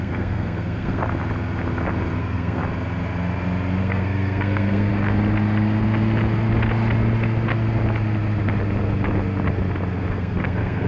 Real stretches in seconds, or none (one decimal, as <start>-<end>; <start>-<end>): 1.0-2.2; 2.6-3.8; 4.9-10.1